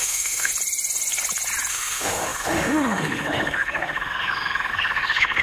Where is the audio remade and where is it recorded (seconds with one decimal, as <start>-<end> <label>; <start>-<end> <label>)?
0.0-0.5 remade; 0.5-1.7 recorded; 1.7-5.4 remade